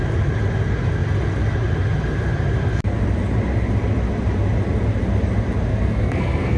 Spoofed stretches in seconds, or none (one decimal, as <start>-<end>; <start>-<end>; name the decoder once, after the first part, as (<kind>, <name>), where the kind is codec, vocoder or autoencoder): 5.7-6.6 (codec, SNAC)